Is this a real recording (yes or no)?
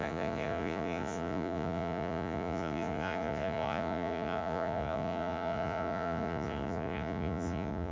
no